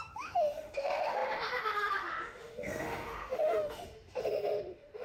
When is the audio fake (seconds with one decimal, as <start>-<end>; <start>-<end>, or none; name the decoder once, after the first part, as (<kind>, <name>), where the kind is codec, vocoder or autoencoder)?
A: 0.0-5.0 (autoencoder, DAC-VAE)